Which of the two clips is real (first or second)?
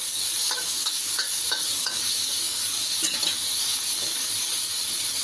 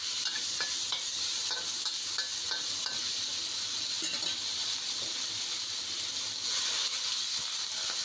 second